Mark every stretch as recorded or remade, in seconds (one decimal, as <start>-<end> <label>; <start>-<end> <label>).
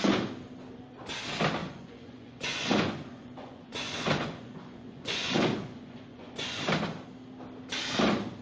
0.0-1.6 recorded; 1.6-6.6 remade; 6.6-8.4 recorded